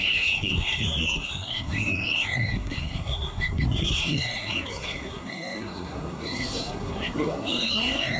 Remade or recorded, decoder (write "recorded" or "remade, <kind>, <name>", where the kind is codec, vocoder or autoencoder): remade, codec, SNAC